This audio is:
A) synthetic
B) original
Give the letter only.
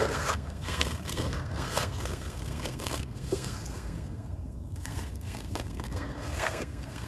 A